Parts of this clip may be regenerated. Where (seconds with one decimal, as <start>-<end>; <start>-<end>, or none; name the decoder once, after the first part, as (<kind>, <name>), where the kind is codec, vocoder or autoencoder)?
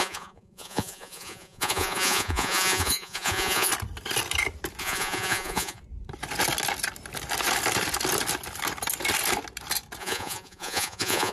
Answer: 0.0-3.7 (vocoder, Vocos); 4.8-5.8; 10.0-11.3